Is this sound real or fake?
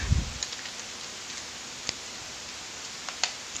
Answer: real